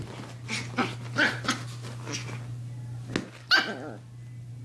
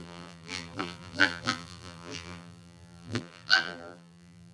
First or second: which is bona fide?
first